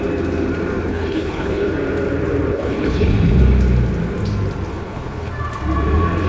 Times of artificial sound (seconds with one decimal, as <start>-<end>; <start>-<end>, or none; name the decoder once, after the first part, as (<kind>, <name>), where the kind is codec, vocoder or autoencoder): 0.9-1.7 (codec, HILCodec); 2.5-3.4; 4.7-5.3